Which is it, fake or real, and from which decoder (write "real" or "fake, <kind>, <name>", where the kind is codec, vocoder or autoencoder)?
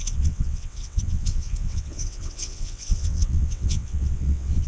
fake, vocoder, WaveNeXt